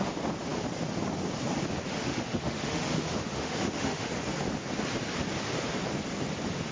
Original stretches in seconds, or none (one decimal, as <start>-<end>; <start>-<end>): 0.0-1.9; 4.1-6.7